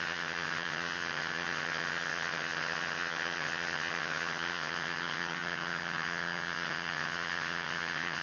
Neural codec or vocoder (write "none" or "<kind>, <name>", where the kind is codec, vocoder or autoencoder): vocoder, HiFi-GAN